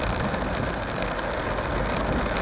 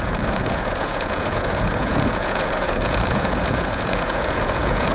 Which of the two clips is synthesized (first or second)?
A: second